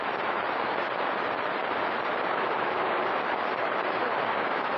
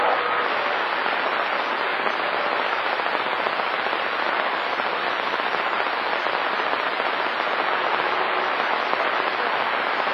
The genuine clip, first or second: second